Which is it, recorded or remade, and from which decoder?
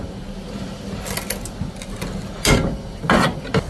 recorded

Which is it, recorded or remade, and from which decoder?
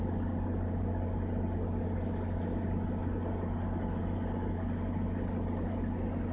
recorded